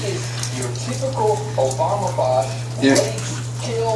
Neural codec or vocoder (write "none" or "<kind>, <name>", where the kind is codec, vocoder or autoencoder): none